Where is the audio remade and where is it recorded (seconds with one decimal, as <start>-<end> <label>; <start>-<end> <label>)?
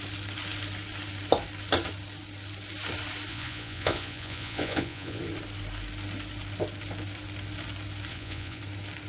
0.0-3.3 recorded; 3.3-5.2 remade; 5.2-8.1 recorded; 8.1-8.6 remade; 8.6-9.1 recorded